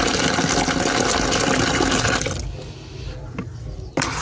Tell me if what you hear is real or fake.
real